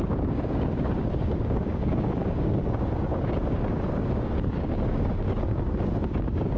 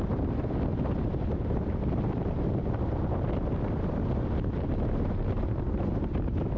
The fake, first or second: first